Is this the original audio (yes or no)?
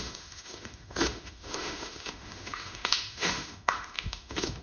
no